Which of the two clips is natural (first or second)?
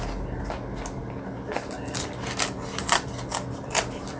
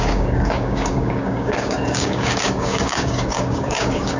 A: first